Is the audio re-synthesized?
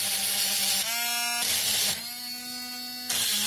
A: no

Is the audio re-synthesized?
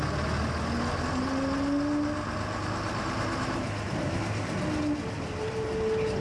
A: no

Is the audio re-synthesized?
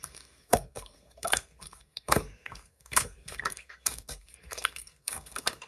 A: yes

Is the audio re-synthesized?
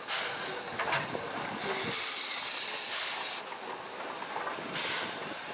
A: no